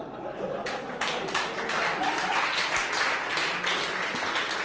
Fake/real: real